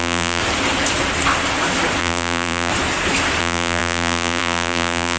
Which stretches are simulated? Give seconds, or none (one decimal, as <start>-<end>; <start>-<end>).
0.0-0.4; 2.0-2.7; 3.4-5.2